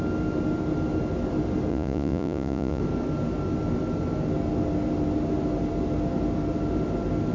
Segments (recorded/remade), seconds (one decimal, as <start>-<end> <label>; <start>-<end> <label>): 0.0-1.7 recorded; 1.7-2.8 remade; 2.8-7.3 recorded